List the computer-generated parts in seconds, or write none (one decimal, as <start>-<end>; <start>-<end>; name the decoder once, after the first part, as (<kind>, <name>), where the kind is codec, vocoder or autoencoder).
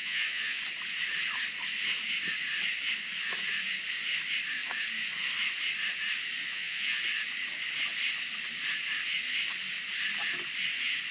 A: 0.0-0.6 (vocoder, Vocos); 6.4-7.0